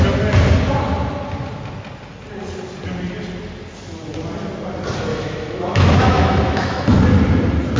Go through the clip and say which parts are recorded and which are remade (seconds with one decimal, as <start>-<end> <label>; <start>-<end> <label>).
0.0-5.1 recorded; 5.1-7.0 remade; 7.0-7.8 recorded